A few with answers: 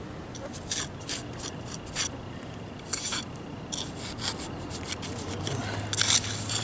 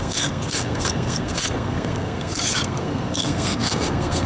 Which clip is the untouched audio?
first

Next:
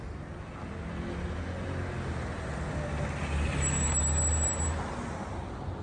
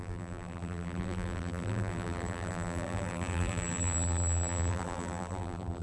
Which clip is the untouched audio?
first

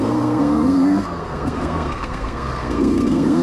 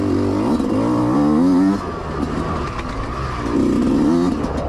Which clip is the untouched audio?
second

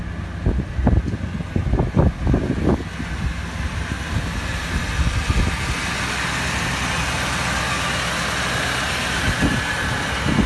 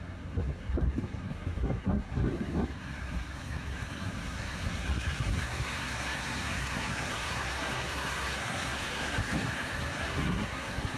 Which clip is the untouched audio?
first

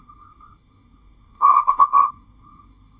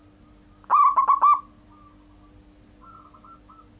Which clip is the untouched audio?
second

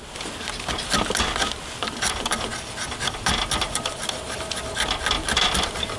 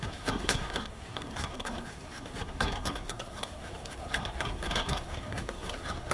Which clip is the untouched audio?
first